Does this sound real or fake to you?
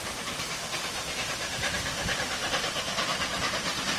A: fake